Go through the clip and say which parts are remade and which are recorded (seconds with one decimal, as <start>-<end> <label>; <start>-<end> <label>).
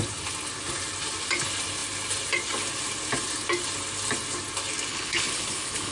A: 0.0-4.9 recorded; 4.9-5.9 remade